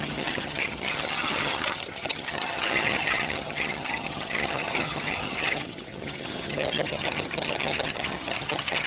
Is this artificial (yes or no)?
yes